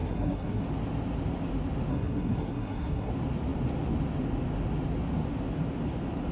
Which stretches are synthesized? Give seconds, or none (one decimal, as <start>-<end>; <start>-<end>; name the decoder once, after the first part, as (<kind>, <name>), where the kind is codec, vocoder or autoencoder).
0.0-0.6 (codec, SNAC); 1.9-3.1